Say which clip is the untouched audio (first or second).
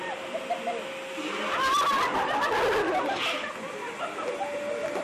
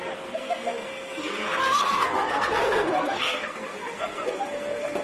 first